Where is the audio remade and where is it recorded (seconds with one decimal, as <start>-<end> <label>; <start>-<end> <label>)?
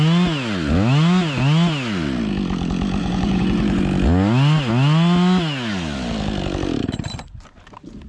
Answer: 0.0-3.0 recorded; 3.0-3.8 remade; 3.8-8.1 recorded